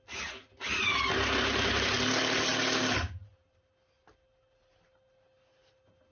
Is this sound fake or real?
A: real